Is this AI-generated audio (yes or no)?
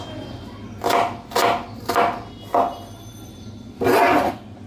no